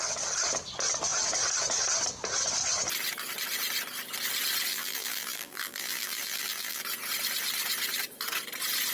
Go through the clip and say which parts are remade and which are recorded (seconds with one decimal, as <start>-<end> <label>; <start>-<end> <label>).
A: 0.0-4.7 recorded; 4.7-6.8 remade; 6.8-8.9 recorded